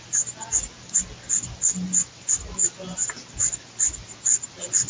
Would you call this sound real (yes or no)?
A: yes